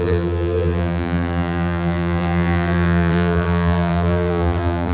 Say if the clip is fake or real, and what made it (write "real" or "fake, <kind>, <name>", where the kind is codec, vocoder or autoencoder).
fake, vocoder, BigVGAN v2